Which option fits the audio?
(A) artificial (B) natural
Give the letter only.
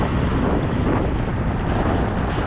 B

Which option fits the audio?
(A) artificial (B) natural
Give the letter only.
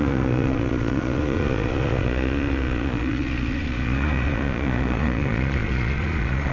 A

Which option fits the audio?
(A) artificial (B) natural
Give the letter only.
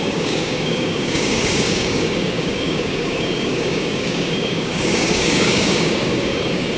A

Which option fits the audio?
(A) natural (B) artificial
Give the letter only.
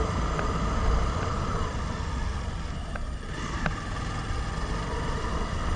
A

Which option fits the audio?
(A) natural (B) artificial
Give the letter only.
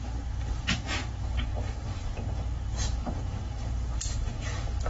A